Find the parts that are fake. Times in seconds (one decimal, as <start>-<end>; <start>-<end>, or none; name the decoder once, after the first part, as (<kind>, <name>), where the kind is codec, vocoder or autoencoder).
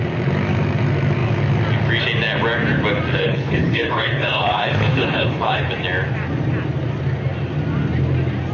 3.1-5.7 (codec, HILCodec)